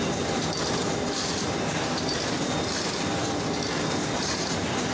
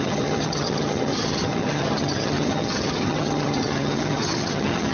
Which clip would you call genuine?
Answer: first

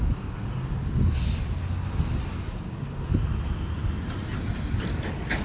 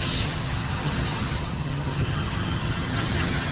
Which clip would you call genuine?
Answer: first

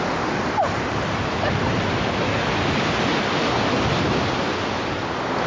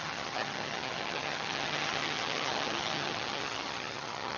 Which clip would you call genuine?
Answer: first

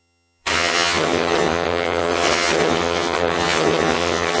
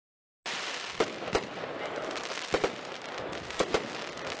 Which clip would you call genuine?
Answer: second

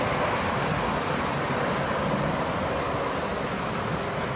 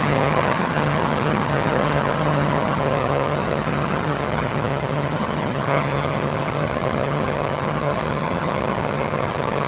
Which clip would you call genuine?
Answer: first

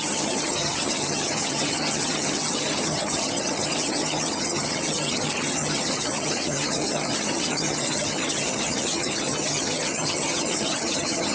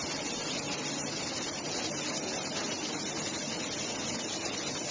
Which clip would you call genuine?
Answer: second